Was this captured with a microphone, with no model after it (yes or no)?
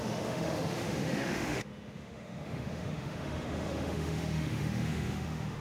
no